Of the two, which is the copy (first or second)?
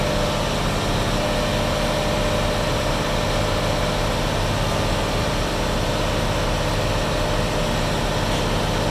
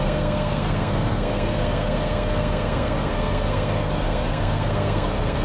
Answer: second